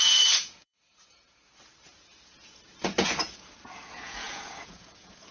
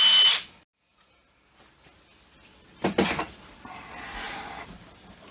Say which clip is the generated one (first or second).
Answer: first